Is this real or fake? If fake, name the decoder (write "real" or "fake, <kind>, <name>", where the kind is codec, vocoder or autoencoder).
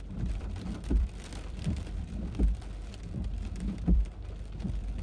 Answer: fake, vocoder, BigVGAN v2